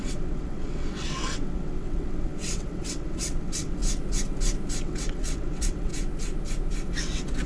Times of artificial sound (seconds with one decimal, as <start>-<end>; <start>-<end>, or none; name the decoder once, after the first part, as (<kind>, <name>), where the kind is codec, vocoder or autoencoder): 0.0-3.8 (vocoder, WaveNeXt); 4.8-5.9; 6.9-7.5